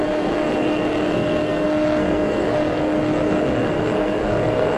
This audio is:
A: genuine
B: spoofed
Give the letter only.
B